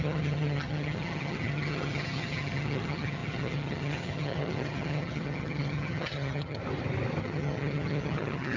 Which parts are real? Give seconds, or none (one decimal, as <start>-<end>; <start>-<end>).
6.6-7.2